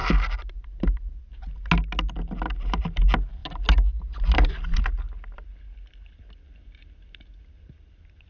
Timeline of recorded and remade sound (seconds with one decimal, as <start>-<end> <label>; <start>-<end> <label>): 0.0-8.3 recorded